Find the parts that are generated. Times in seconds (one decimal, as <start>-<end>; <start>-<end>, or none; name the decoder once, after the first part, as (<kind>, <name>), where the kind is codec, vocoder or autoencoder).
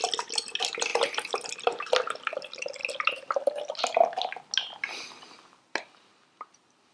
none